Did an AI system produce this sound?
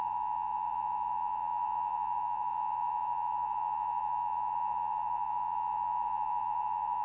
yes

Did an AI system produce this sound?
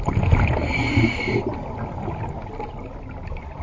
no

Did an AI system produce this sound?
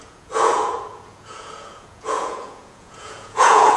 yes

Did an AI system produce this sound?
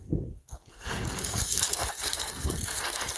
yes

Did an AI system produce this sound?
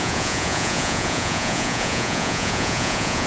yes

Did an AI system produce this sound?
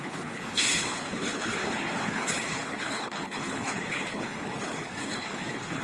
yes